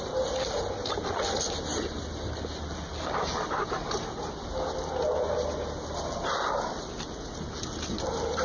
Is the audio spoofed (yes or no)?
no